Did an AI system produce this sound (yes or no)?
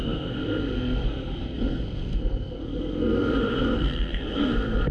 yes